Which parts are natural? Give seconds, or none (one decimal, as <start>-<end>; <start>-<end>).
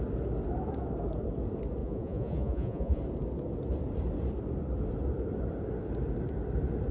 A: 0.0-1.8; 3.0-6.9